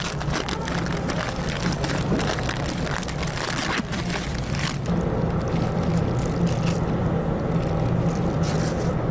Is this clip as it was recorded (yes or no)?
yes